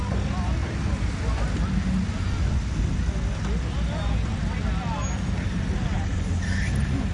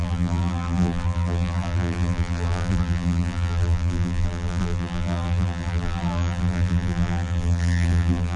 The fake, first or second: second